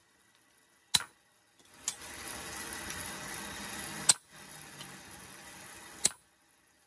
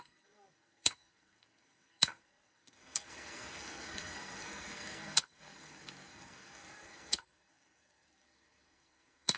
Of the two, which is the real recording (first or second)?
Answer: first